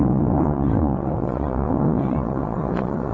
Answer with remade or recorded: remade